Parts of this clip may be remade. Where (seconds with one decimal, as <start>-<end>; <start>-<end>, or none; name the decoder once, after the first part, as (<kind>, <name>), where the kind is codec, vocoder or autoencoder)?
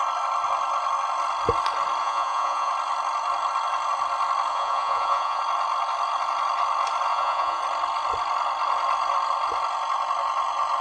2.0-2.7 (vocoder, Vocos); 4.5-5.4; 7.1-7.6